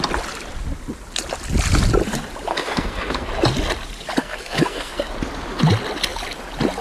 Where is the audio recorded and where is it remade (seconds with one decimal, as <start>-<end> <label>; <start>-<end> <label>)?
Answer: 0.0-2.5 recorded; 2.5-3.3 remade; 3.3-4.2 recorded; 4.2-5.1 remade; 5.1-6.8 recorded